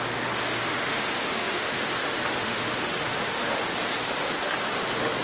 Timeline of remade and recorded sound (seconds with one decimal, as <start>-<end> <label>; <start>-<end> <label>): 0.0-0.7 recorded; 0.7-3.6 remade; 3.6-5.2 recorded